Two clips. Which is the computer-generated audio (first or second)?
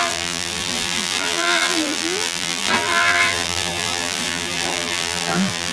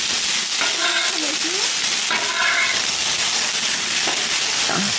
first